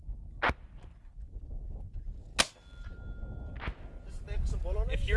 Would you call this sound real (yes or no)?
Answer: yes